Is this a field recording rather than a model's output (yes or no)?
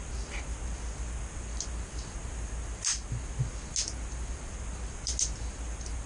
yes